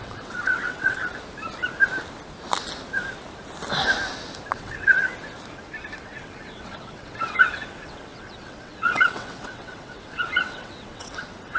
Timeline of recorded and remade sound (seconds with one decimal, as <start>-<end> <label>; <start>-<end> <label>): 0.0-1.0 remade; 1.0-4.5 recorded; 4.5-5.1 remade; 5.1-6.0 recorded; 6.0-11.6 remade